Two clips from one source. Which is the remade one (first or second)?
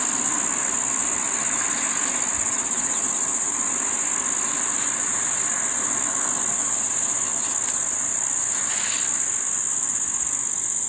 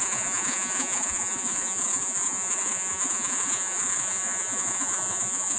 second